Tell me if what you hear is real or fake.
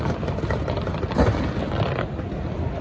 real